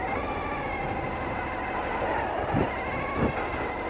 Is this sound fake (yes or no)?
no